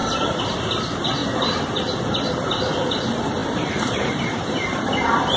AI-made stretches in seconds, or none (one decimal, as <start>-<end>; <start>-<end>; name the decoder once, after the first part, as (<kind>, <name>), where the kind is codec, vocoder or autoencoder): 0.0-1.2 (vocoder, BigVGAN v2); 2.3-5.4